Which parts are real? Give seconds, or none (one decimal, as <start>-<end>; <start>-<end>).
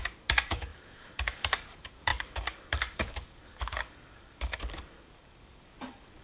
none